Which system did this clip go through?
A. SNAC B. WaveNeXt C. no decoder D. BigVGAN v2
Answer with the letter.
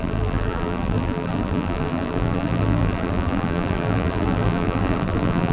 D